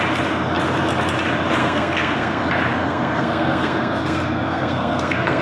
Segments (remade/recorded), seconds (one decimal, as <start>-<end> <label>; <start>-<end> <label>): 0.0-1.6 recorded; 1.6-2.4 remade; 2.4-2.8 recorded; 2.8-5.4 remade